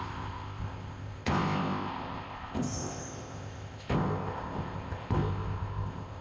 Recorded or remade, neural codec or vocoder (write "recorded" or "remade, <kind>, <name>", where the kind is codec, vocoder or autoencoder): remade, codec, ZipCodec